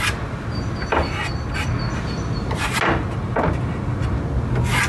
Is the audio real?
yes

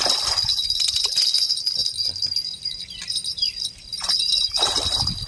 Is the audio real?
yes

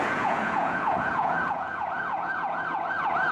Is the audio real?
no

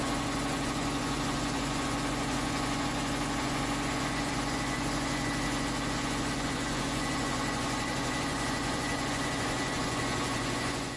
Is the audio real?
no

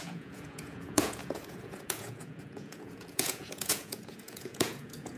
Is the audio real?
no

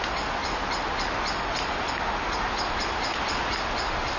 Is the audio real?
yes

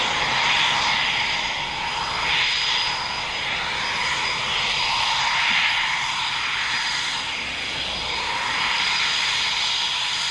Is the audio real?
yes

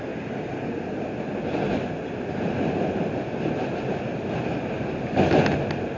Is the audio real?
yes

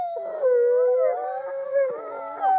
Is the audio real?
yes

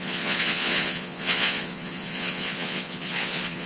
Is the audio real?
no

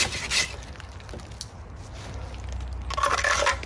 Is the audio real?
yes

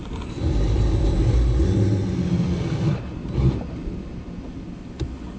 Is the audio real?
yes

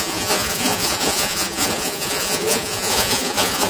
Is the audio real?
no